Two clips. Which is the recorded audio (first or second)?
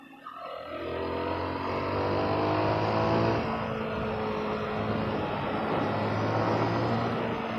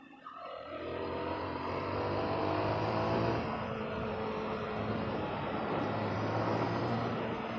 first